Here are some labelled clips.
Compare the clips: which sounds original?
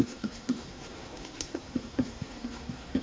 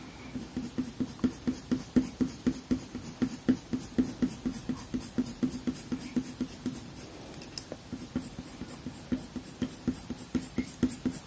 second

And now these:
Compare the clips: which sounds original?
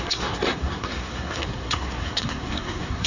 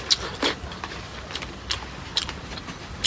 second